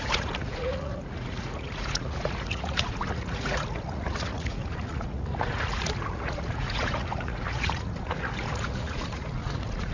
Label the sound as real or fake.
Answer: fake